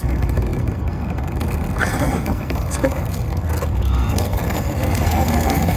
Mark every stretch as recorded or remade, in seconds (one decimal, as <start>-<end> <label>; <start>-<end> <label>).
0.0-5.8 remade